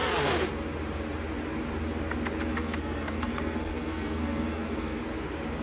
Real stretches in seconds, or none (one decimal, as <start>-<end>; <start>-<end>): 0.0-2.5; 5.0-5.6